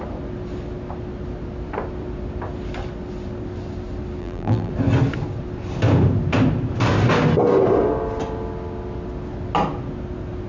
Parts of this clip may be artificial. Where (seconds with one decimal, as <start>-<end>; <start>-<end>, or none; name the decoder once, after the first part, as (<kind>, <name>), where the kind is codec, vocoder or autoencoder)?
4.2-4.7 (vocoder, BigVGAN v2)